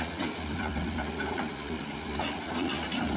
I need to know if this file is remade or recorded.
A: remade